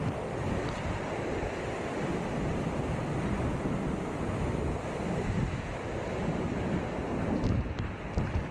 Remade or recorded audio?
remade